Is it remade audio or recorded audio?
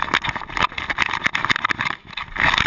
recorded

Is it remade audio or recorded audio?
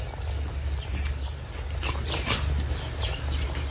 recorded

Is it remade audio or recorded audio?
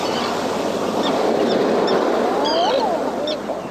recorded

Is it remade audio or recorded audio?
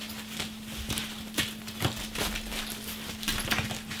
recorded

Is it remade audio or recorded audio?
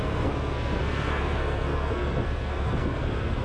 remade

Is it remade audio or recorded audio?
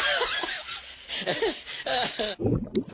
recorded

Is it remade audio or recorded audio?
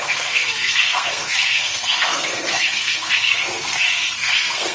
remade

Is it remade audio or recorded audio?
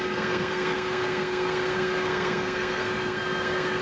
remade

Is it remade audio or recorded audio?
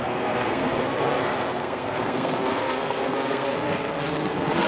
remade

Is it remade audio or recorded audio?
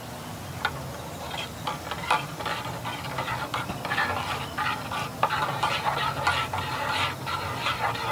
recorded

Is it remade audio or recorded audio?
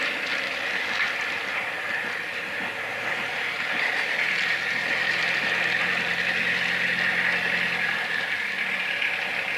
recorded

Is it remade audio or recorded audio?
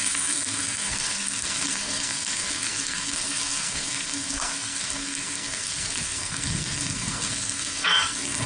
remade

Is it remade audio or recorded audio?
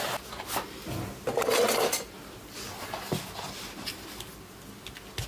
recorded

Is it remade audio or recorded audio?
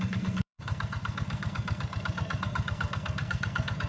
remade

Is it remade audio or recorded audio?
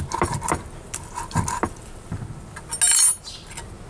recorded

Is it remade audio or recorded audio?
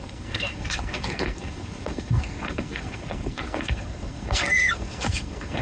remade